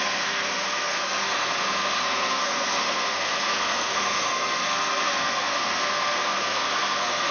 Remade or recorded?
remade